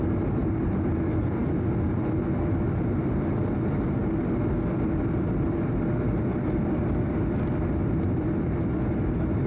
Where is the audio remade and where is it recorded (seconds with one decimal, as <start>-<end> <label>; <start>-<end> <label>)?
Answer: 0.0-9.5 recorded